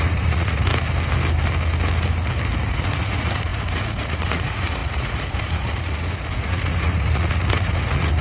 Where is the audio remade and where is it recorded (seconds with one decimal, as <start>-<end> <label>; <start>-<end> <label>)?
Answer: 0.0-0.7 remade; 0.7-2.6 recorded; 2.6-8.2 remade